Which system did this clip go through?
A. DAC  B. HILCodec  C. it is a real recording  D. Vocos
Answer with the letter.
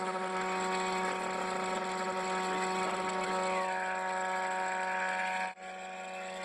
C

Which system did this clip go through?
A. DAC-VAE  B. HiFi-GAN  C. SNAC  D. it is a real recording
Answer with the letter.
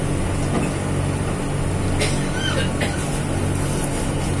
D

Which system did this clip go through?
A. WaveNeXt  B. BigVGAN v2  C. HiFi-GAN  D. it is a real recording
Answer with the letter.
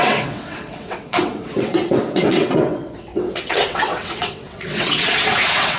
A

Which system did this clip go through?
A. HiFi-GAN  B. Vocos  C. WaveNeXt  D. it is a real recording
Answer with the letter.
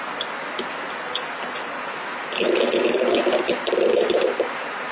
D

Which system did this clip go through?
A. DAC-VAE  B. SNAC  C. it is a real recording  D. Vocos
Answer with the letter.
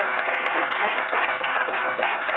B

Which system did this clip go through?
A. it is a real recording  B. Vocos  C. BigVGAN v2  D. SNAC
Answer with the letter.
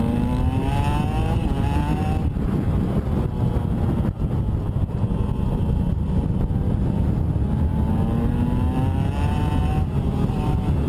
A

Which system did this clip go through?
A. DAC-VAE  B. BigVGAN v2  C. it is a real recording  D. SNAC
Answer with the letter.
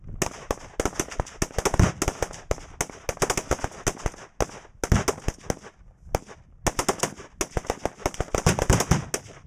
C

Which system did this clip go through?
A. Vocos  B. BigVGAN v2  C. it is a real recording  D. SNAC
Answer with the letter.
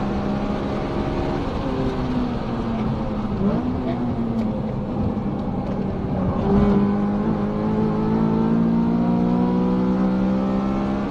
C